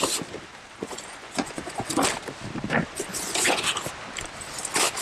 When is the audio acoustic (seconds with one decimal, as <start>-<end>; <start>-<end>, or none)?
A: 0.0-0.8; 1.9-3.1; 3.6-5.0